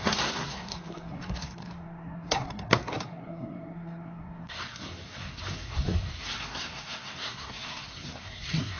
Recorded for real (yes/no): no